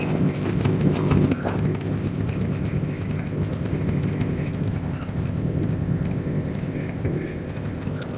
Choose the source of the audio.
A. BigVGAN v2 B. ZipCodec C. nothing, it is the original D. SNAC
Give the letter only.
B